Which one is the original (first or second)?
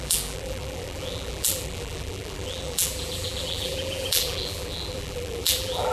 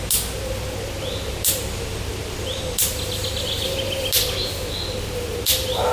second